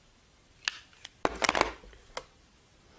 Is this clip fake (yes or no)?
no